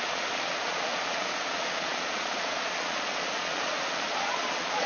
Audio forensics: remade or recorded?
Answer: remade